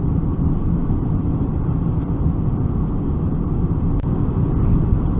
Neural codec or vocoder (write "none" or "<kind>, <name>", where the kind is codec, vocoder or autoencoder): none